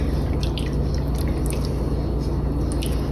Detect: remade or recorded recorded